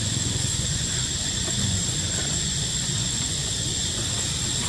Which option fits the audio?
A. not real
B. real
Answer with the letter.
A